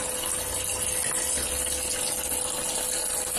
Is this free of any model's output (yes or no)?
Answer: yes